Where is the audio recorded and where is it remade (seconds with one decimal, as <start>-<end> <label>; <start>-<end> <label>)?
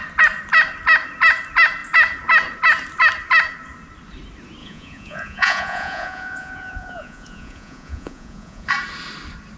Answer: 0.0-4.6 recorded; 4.6-8.7 remade; 8.7-9.6 recorded